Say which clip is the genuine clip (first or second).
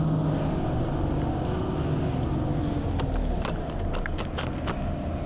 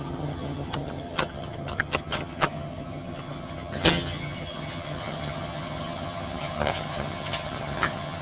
first